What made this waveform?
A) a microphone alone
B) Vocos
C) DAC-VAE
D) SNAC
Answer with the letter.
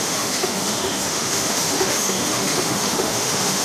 C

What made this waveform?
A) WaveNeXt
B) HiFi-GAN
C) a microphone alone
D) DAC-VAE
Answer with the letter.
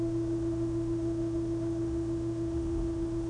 D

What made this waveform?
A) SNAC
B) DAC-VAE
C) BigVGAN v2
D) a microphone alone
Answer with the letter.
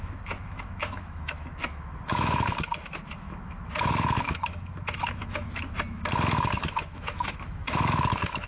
B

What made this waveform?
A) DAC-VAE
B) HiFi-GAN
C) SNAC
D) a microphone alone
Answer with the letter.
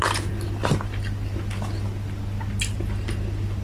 D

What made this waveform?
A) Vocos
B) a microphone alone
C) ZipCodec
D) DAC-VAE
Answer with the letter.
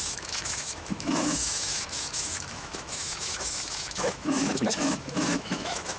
D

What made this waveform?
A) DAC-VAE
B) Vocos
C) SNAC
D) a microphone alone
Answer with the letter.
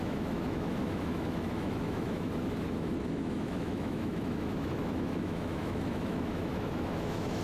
A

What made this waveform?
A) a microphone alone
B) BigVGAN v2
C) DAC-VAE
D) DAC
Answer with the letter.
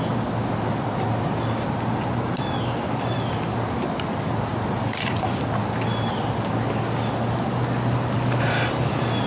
A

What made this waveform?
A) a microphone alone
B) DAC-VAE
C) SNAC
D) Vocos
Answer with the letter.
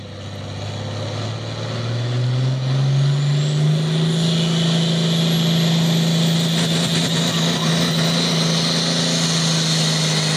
A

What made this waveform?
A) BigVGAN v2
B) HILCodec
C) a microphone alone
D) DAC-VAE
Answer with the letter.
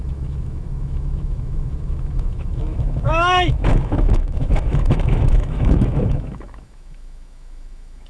D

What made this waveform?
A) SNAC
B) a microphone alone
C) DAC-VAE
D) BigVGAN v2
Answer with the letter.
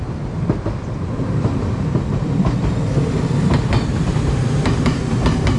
B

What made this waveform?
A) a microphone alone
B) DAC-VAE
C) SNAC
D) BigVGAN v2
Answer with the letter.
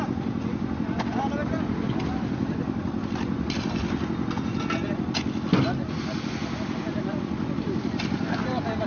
A